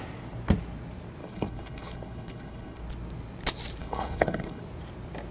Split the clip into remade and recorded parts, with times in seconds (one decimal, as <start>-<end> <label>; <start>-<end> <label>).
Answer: 0.0-1.2 recorded; 1.2-2.8 remade; 2.8-3.8 recorded; 3.8-4.6 remade; 4.6-5.3 recorded